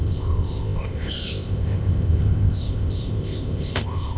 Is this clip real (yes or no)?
no